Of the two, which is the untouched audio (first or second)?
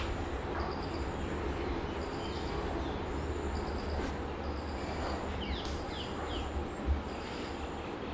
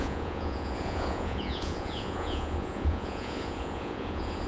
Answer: first